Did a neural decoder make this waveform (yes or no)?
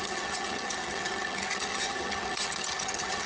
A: yes